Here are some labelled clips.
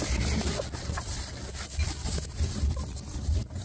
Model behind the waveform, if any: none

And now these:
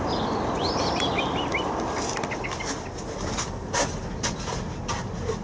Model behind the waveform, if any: none